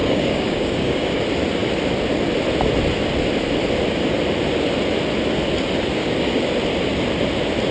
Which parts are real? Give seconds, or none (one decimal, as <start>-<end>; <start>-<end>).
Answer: 1.2-5.9; 6.5-7.7